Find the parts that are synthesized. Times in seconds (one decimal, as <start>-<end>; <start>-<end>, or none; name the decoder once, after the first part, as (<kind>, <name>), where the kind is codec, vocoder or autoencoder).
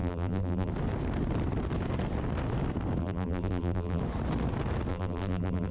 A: 0.0-0.7 (vocoder, BigVGAN v2); 3.0-4.0; 4.9-5.7